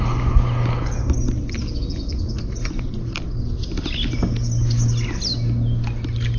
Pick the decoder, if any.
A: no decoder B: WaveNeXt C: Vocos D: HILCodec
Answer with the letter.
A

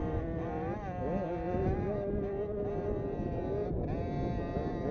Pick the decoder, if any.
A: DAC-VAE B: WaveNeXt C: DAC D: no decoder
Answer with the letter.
D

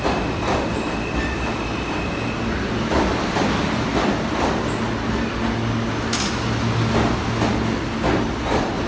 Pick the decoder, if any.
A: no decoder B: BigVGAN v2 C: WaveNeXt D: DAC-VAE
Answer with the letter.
A